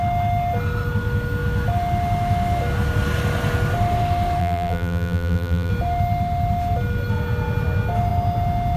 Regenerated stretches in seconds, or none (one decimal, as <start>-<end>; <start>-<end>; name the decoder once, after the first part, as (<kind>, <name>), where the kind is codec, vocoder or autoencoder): 4.4-5.7 (vocoder, BigVGAN v2)